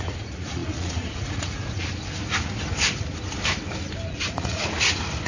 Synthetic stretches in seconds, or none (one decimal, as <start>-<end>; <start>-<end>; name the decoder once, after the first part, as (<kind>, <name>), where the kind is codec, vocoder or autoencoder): 0.0-1.8 (vocoder, Vocos); 4.1-5.3